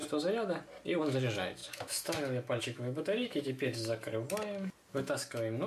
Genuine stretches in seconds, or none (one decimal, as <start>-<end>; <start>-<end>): 0.0-1.0; 4.1-5.0